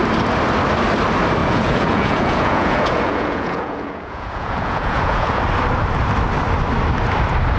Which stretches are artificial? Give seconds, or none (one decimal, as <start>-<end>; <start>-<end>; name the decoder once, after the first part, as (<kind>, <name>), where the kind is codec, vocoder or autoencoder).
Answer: 1.4-5.4 (vocoder, Vocos)